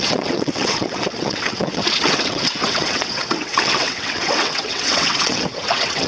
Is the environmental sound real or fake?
fake